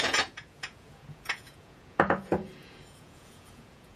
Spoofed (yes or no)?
yes